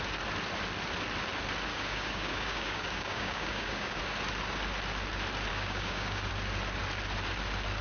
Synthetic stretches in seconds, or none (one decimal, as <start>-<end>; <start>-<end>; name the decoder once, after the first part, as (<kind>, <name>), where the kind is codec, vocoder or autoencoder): 1.7-4.0 (codec, DAC); 5.5-6.3